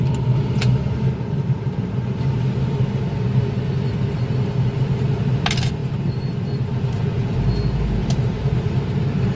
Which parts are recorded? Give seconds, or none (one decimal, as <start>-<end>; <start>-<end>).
0.0-8.0; 8.8-9.3